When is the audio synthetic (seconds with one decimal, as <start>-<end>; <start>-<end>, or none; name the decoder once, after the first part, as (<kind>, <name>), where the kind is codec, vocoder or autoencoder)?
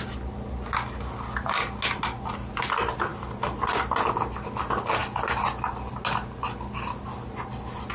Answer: none